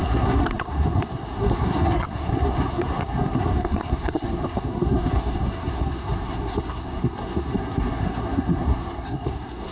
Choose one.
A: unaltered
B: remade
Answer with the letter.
B